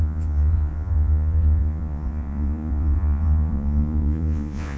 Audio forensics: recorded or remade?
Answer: remade